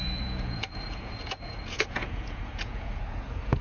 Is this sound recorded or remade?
remade